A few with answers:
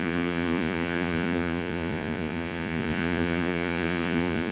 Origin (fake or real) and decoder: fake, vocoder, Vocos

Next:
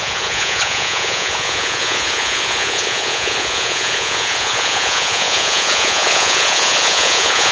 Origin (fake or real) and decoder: fake, vocoder, Vocos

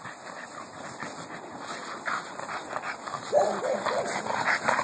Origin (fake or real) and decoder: real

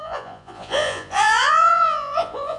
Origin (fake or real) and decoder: fake, vocoder, Vocos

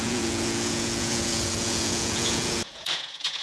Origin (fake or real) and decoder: fake, vocoder, Vocos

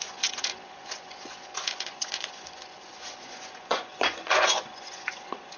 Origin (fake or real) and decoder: fake, vocoder, Vocos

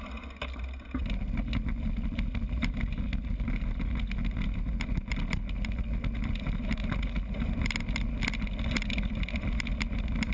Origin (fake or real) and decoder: real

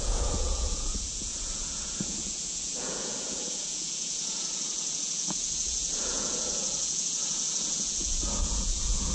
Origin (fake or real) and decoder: fake, vocoder, Vocos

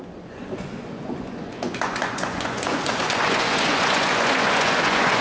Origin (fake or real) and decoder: fake, vocoder, Vocos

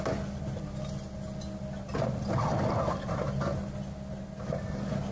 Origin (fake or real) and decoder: real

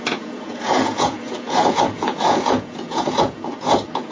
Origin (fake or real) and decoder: fake, vocoder, Vocos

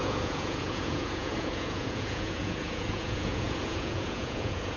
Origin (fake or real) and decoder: fake, vocoder, Vocos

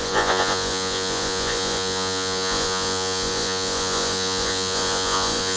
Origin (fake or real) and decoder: fake, vocoder, Vocos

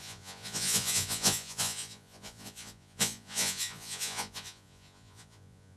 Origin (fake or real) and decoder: fake, vocoder, Vocos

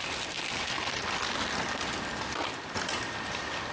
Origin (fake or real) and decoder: real